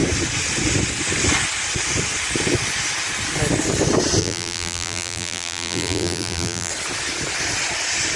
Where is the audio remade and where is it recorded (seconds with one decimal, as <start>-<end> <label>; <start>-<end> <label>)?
0.0-4.2 recorded; 4.2-6.7 remade; 6.7-8.2 recorded